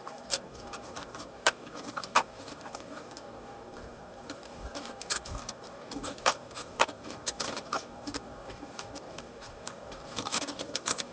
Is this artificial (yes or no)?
yes